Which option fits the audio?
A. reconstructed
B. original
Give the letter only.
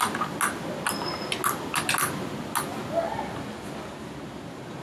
B